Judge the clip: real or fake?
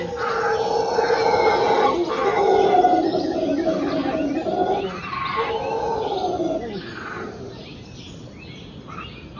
real